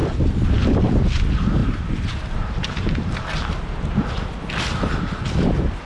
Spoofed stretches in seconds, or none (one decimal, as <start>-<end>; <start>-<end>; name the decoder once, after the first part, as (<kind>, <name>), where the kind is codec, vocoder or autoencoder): 1.6-4.1 (vocoder, BigVGAN v2)